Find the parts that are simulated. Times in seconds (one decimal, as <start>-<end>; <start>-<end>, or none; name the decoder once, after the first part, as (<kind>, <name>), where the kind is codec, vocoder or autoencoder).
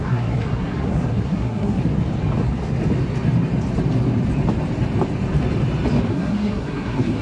0.0-1.8 (codec, SNAC); 6.1-7.2